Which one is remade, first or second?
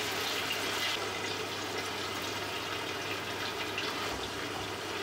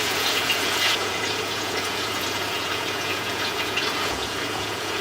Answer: second